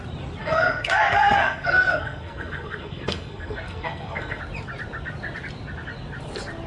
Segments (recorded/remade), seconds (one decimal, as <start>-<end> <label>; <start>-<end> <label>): 0.0-0.4 recorded; 0.4-4.4 remade; 4.4-6.7 recorded